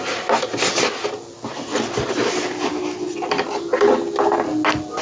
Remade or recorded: recorded